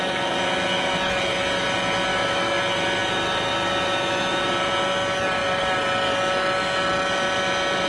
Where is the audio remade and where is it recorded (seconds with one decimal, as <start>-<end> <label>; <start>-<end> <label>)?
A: 0.0-2.1 recorded; 2.1-2.6 remade; 2.6-7.9 recorded